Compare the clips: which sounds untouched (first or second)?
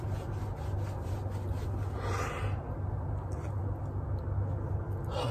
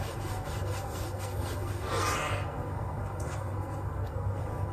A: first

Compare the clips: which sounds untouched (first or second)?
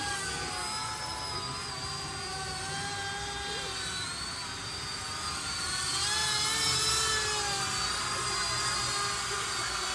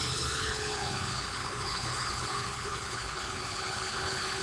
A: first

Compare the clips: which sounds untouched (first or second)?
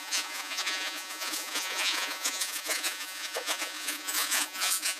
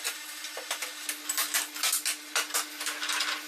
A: second